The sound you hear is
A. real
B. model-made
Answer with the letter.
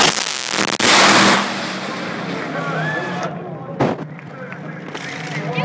A